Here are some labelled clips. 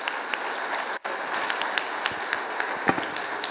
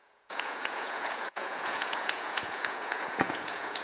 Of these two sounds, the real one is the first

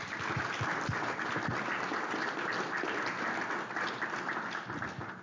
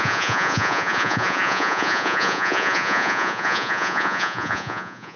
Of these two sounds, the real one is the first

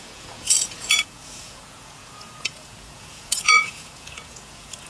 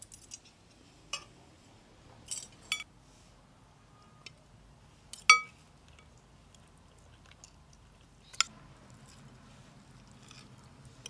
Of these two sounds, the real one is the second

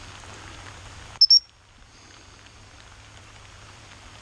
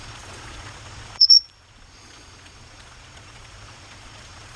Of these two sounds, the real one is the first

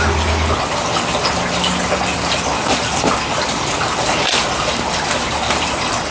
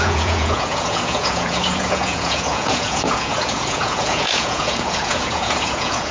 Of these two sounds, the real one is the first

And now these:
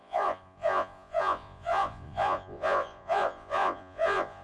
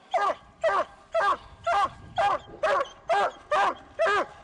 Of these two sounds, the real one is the second